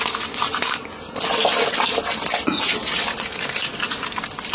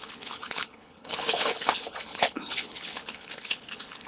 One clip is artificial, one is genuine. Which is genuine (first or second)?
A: first